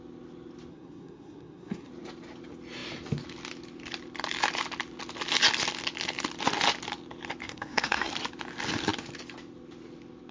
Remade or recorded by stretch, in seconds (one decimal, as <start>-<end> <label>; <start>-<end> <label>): 0.0-0.7 recorded; 0.7-1.9 remade; 1.9-7.4 recorded; 7.4-8.1 remade; 8.1-10.3 recorded